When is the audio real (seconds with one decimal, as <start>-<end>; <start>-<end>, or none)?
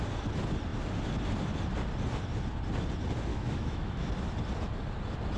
0.0-3.3; 4.1-5.4